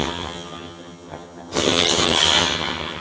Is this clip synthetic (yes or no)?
yes